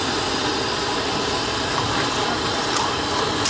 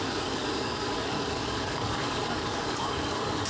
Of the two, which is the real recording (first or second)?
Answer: first